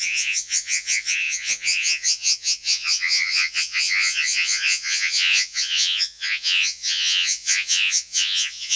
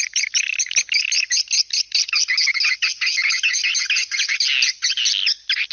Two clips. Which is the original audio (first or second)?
second